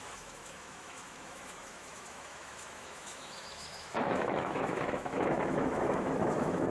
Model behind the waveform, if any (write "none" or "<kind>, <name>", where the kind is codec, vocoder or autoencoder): autoencoder, DAC-VAE